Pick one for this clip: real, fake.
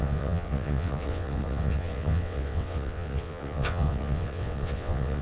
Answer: fake